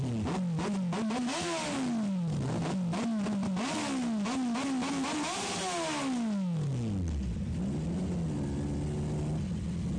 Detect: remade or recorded recorded